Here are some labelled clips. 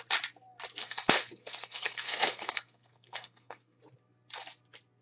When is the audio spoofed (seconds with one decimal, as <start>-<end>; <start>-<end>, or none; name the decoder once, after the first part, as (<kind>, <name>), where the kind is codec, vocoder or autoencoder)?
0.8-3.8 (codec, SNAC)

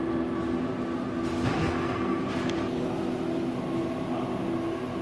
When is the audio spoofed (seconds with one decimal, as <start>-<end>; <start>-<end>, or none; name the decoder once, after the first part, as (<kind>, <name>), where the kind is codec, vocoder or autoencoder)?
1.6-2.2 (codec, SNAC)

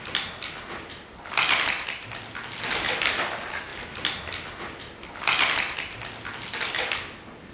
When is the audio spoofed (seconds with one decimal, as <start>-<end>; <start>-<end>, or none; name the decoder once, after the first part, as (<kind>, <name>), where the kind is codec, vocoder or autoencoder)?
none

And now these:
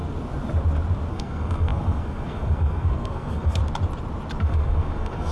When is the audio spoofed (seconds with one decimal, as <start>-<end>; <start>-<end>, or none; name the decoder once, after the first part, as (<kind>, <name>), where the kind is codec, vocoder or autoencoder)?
1.1-3.6 (codec, SNAC); 4.4-5.3

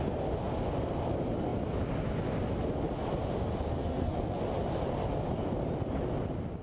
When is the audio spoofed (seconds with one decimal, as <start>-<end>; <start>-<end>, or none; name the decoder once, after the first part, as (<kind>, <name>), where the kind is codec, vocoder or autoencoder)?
3.8-4.4 (codec, SNAC)

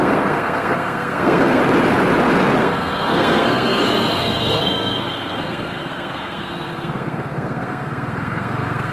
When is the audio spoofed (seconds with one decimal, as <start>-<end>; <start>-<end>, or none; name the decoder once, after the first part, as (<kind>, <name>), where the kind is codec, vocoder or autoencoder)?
0.0-1.6 (codec, SNAC); 2.6-8.9

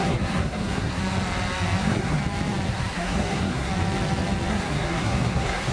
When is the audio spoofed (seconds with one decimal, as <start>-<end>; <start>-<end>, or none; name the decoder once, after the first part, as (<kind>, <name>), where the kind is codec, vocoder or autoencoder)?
0.0-1.0 (codec, SNAC); 1.8-2.2; 2.7-3.7; 4.5-5.7